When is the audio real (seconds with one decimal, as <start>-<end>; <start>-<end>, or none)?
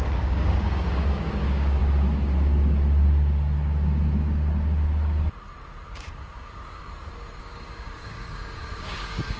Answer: 1.8-6.0; 6.9-7.4